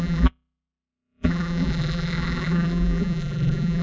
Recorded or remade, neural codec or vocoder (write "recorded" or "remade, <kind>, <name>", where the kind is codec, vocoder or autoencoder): remade, vocoder, BigVGAN v2